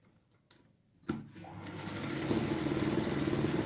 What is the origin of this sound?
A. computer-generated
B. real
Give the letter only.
B